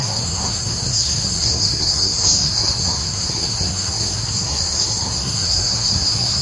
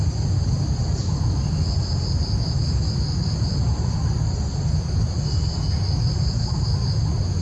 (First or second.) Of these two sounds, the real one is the second